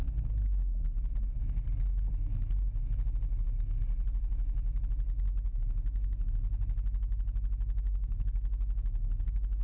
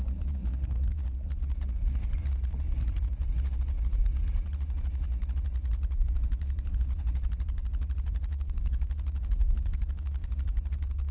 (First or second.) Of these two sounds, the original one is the first